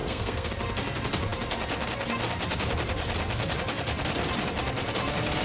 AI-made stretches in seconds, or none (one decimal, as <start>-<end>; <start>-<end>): 0.0-0.5